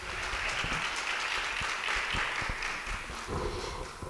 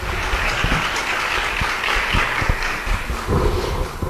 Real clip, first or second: first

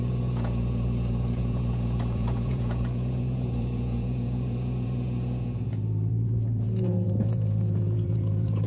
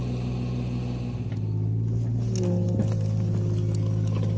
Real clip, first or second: second